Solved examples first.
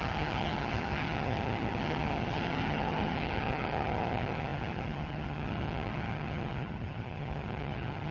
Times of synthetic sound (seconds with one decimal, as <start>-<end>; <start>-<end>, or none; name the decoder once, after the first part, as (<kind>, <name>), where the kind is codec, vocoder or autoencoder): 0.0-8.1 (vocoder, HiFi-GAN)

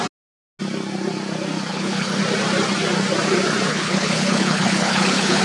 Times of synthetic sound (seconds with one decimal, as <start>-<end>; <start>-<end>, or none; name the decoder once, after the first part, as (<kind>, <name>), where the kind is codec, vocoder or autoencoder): 1.7-2.2 (codec, HILCodec); 3.7-5.4

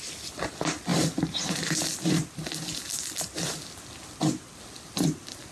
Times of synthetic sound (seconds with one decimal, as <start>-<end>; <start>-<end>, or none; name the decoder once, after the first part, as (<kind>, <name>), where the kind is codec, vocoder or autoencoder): none